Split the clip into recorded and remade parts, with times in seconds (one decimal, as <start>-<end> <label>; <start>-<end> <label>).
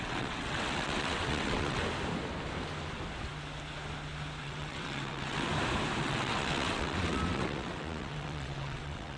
0.0-1.8 remade; 1.8-4.4 recorded; 4.4-5.5 remade; 5.5-6.0 recorded; 6.0-9.2 remade